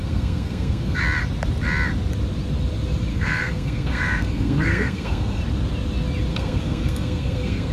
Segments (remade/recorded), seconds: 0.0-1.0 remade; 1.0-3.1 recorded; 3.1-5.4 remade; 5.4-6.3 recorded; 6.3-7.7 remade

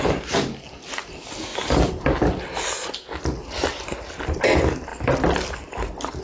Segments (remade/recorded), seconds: 0.0-6.2 recorded

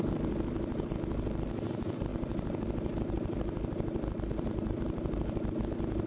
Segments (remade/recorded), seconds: 0.0-6.1 recorded